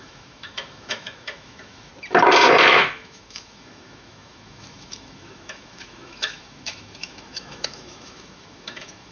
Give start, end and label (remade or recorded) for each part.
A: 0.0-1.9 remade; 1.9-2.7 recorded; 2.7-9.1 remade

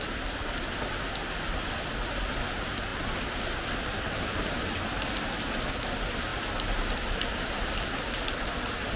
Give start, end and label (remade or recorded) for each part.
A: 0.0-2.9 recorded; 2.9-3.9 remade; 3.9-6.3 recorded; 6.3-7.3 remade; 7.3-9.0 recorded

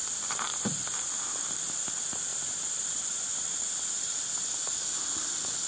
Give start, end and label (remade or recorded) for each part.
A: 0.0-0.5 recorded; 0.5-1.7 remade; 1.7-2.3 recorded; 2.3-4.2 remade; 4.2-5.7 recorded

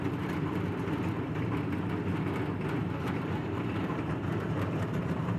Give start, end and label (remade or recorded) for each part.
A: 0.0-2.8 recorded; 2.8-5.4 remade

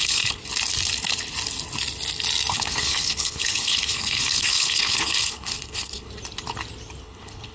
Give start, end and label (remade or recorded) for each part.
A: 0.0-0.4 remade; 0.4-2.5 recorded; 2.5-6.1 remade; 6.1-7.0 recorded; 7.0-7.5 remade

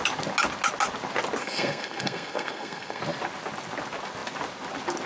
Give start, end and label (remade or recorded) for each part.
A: 0.0-1.4 recorded; 1.4-3.0 remade; 3.0-5.1 recorded

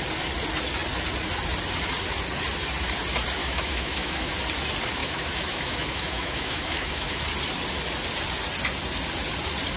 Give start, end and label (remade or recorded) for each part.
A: 0.0-3.4 recorded; 3.4-4.3 remade; 4.3-5.0 recorded; 5.0-7.2 remade; 7.2-9.8 recorded

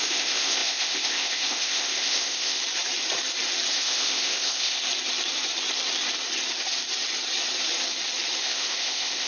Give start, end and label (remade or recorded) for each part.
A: 0.0-2.6 remade; 2.6-3.7 recorded; 3.7-4.8 remade; 4.8-8.4 recorded; 8.4-9.3 remade